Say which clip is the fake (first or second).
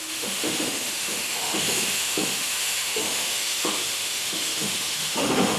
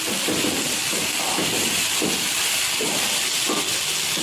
first